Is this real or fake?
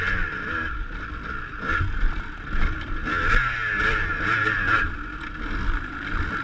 real